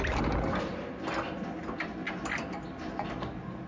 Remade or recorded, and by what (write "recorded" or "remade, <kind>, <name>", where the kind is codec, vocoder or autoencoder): recorded